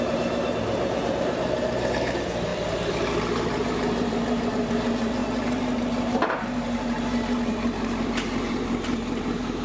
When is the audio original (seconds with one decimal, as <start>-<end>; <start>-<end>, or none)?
none